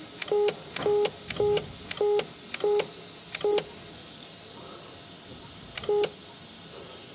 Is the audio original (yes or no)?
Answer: yes